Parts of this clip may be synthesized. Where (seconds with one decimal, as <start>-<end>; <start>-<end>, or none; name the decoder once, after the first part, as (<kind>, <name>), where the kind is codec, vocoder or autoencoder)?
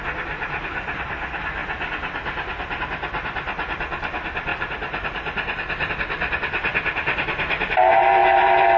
4.5-5.9 (vocoder, BigVGAN v2)